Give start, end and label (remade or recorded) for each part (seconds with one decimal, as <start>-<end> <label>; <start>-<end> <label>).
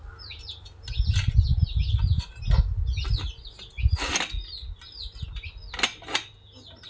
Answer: 0.0-6.9 recorded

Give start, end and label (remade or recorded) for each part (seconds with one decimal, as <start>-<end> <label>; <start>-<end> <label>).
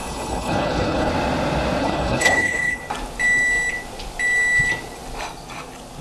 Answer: 0.0-1.1 remade; 1.1-1.8 recorded; 1.8-2.8 remade; 2.8-6.0 recorded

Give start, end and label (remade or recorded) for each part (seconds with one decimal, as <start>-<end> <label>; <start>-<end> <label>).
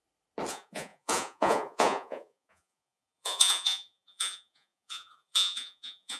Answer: 0.0-0.5 recorded; 0.5-6.2 remade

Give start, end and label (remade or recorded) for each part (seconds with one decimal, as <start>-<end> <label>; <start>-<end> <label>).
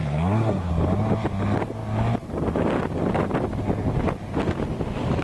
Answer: 0.0-0.7 remade; 0.7-5.2 recorded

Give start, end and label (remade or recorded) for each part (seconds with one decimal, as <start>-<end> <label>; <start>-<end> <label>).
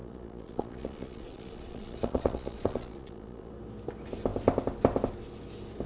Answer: 0.0-3.5 remade; 3.5-5.9 recorded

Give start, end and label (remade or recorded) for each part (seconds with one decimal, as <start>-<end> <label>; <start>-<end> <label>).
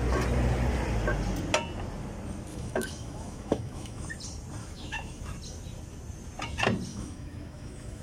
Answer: 0.0-2.5 recorded; 2.5-4.1 remade; 4.1-4.6 recorded; 4.6-5.2 remade; 5.2-6.9 recorded; 6.9-8.0 remade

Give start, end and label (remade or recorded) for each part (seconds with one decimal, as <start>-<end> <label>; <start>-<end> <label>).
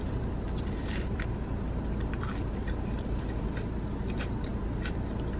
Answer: 0.0-1.3 remade; 1.3-5.4 recorded